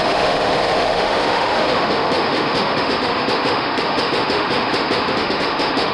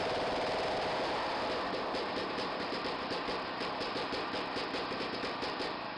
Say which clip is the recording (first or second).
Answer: second